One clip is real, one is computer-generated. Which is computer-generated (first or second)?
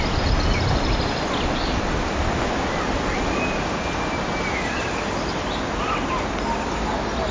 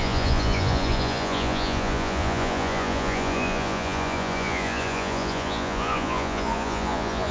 second